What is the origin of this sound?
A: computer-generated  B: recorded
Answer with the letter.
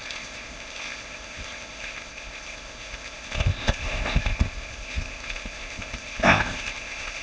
A